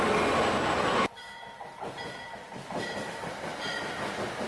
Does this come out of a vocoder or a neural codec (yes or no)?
no